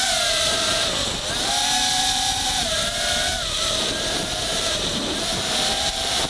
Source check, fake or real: fake